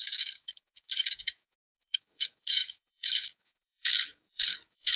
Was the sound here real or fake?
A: fake